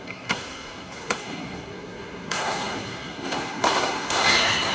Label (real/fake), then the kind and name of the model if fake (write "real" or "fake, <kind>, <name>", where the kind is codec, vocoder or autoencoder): fake, codec, SNAC